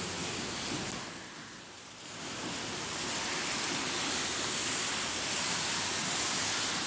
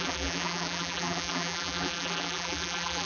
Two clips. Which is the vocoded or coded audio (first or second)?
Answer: second